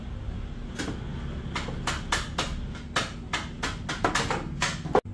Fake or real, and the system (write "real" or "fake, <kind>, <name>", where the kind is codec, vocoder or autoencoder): real